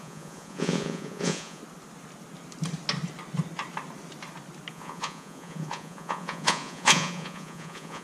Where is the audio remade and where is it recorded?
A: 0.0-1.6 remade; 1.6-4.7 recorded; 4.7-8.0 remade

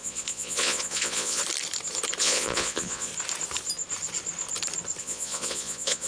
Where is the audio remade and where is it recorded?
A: 0.0-1.4 remade; 1.4-2.2 recorded; 2.2-3.1 remade; 3.1-5.0 recorded; 5.0-6.1 remade

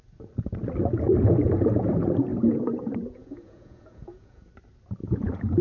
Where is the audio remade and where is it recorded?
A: 0.0-2.3 recorded; 2.3-4.4 remade; 4.4-5.0 recorded; 5.0-5.6 remade

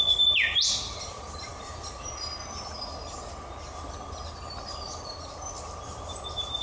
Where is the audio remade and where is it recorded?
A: 0.0-6.6 recorded

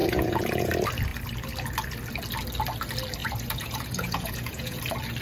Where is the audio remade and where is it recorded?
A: 0.0-0.7 remade; 0.7-3.2 recorded; 3.2-4.8 remade; 4.8-5.2 recorded

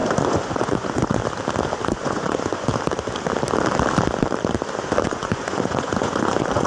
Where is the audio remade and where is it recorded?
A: 0.0-1.2 remade; 1.2-1.9 recorded; 1.9-2.7 remade; 2.7-5.0 recorded; 5.0-6.7 remade

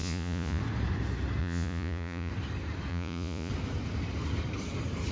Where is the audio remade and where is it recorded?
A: 0.0-0.6 remade; 0.6-1.4 recorded; 1.4-2.3 remade; 2.3-2.9 recorded; 2.9-3.5 remade; 3.5-5.1 recorded